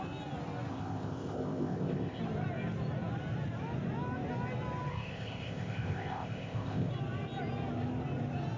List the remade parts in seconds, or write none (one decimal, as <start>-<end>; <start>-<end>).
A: 0.7-2.2; 4.9-6.9